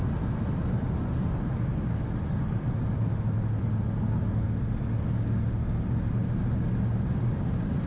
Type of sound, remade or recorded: recorded